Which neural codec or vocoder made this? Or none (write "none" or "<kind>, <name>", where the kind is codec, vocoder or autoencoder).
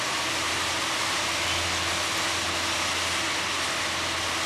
none